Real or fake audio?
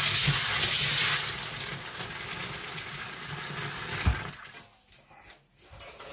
real